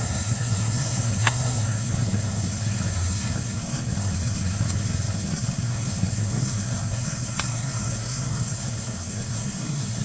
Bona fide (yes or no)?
no